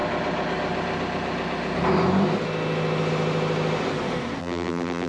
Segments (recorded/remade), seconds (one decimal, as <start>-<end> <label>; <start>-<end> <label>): 0.0-4.4 recorded; 4.4-5.1 remade